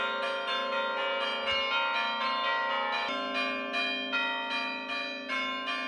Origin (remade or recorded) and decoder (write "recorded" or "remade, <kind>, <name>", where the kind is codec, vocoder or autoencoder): recorded